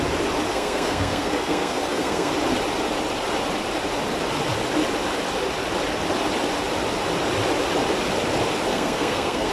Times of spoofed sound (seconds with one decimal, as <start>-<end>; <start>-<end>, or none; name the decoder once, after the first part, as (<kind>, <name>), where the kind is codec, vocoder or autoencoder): 0.5-2.3 (codec, SNAC); 8.7-9.5